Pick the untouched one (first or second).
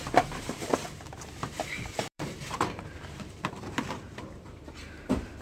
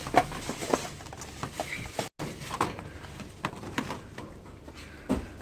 second